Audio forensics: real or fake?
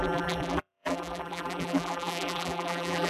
fake